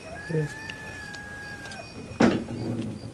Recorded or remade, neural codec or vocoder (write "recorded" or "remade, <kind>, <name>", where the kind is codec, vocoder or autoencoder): recorded